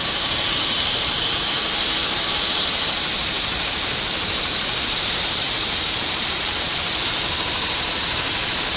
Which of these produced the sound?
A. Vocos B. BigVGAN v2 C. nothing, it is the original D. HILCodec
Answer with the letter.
B